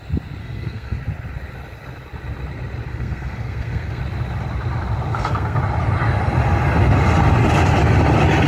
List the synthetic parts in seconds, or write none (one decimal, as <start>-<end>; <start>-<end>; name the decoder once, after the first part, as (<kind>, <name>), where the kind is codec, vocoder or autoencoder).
0.4-1.0 (codec, SNAC); 2.9-4.0; 5.1-5.6